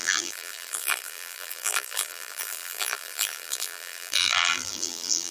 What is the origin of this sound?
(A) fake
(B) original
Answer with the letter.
A